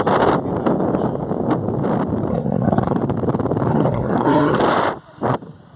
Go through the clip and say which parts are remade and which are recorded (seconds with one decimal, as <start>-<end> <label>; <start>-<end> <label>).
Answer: 0.0-2.3 recorded; 2.3-3.0 remade; 3.0-3.7 recorded; 3.7-4.6 remade; 4.6-5.8 recorded